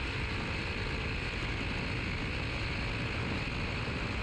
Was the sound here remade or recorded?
recorded